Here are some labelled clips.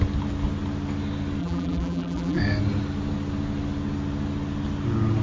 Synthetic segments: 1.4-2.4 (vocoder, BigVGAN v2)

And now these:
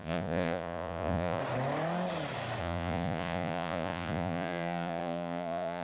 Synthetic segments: 0.0-1.4 (vocoder, Vocos); 2.6-5.8

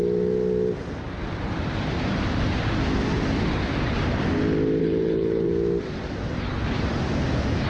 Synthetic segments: 4.8-5.5 (codec, HILCodec)

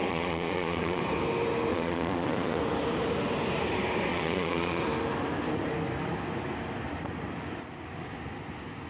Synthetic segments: 0.0-1.0 (vocoder, Vocos); 1.7-2.6; 4.1-4.8

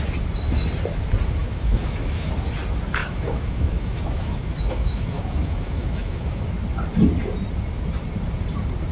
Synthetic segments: 1.4-2.3 (autoencoder, DAC-VAE); 3.0-6.4

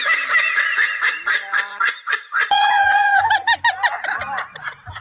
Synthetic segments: 1.7-3.2 (vocoder, Vocos)